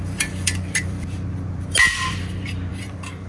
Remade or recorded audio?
remade